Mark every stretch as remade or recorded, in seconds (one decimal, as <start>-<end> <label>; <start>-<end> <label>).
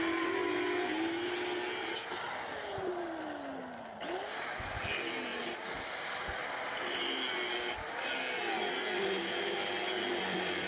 0.0-10.7 recorded